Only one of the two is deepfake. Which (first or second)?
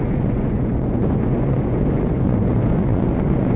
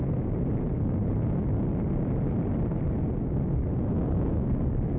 first